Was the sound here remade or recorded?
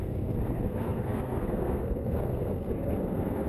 remade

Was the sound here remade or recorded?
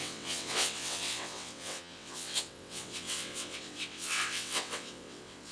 remade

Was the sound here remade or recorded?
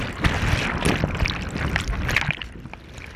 recorded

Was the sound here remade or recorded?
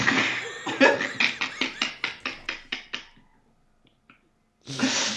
recorded